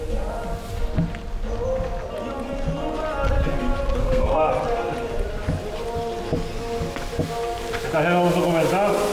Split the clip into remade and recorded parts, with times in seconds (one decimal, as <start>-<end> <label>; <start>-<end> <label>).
0.0-4.0 recorded; 4.0-4.5 remade; 4.5-9.1 recorded